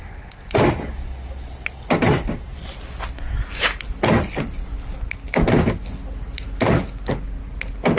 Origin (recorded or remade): recorded